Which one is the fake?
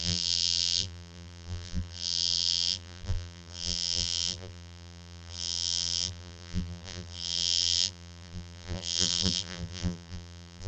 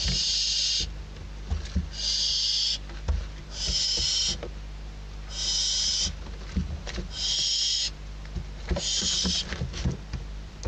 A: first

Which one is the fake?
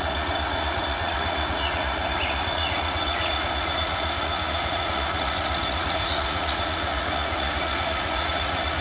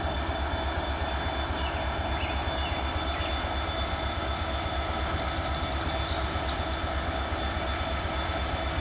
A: first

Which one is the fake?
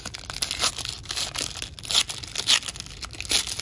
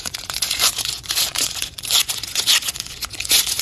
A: second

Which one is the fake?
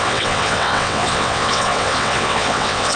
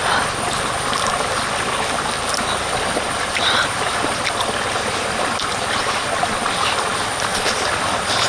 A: first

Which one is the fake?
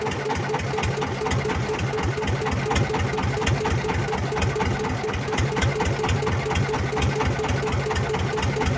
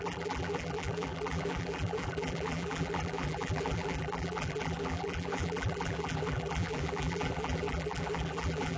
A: second